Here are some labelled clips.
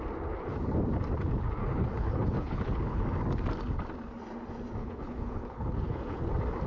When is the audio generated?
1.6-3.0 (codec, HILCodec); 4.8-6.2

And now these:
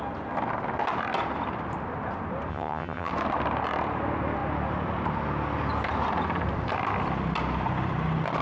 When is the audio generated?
2.5-3.1 (vocoder, HiFi-GAN)

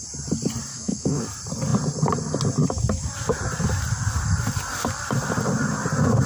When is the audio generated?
0.7-1.2 (autoencoder, DAC-VAE)

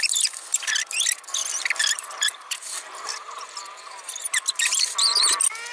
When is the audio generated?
1.4-4.8 (vocoder, BigVGAN v2)

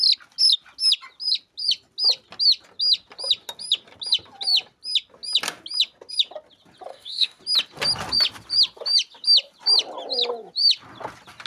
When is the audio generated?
6.9-7.4 (codec, DAC)